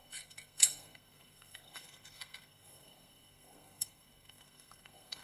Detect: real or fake fake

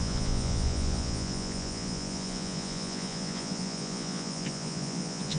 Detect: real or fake fake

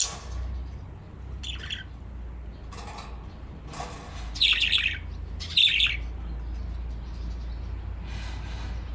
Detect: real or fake real